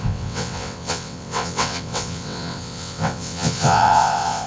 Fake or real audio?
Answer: fake